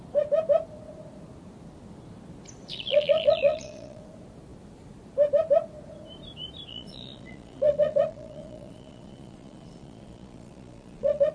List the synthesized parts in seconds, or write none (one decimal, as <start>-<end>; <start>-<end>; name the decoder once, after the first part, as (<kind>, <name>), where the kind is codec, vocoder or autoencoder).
2.7-4.0 (vocoder, Vocos); 6.7-11.3